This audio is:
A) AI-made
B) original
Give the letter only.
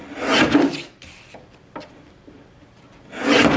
B